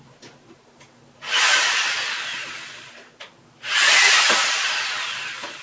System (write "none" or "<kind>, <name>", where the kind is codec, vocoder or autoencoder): none